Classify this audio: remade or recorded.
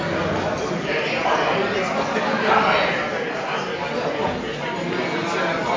recorded